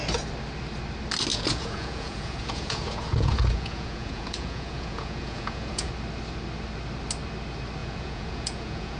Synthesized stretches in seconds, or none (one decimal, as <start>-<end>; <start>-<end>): 1.3-5.9; 7.8-9.0